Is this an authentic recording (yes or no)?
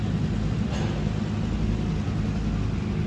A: yes